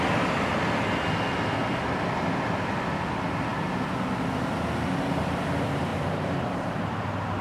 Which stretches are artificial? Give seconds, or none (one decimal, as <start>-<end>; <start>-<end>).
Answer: 5.9-7.0